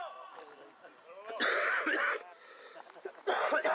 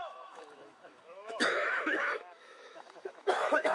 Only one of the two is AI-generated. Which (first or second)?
second